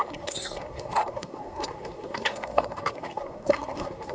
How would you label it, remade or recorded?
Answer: remade